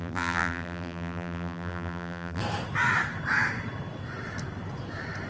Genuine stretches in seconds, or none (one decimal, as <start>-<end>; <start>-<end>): 2.4-5.3